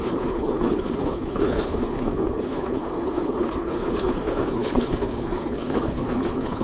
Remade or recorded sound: remade